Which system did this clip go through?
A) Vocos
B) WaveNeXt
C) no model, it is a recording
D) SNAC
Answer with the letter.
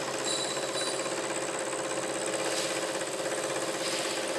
C